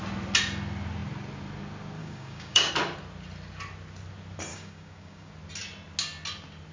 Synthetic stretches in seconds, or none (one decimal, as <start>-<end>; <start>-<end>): 2.0-2.7; 4.5-5.3